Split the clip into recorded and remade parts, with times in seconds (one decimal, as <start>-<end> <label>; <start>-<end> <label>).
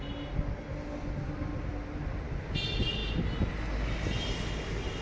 0.0-5.0 recorded